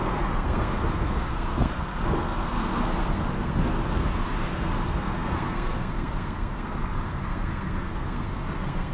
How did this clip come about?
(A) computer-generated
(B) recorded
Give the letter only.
A